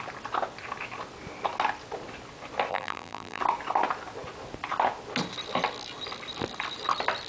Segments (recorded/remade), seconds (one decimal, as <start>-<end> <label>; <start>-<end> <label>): 0.0-2.7 recorded; 2.7-3.4 remade; 3.4-7.3 recorded